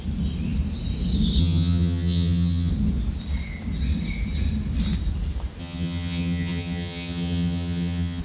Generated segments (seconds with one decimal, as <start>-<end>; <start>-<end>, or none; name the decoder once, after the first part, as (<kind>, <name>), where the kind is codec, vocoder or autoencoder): 1.4-2.7 (vocoder, HiFi-GAN); 5.6-8.2